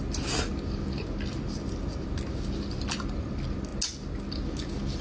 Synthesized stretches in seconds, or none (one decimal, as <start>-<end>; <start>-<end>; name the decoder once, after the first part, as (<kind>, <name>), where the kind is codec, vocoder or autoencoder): 0.0-3.7 (vocoder, BigVGAN v2)